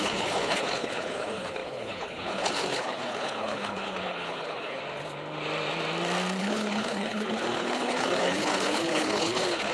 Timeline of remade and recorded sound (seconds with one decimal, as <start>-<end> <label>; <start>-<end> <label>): 0.0-4.8 remade; 4.8-6.4 recorded; 6.4-9.7 remade